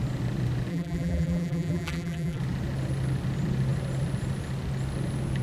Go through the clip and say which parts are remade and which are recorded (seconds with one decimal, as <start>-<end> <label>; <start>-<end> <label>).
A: 0.0-0.7 recorded; 0.7-2.4 remade; 2.4-5.4 recorded